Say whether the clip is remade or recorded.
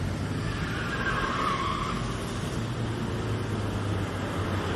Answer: recorded